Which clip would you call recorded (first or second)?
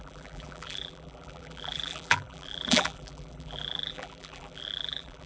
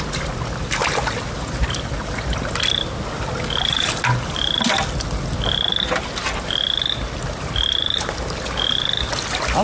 second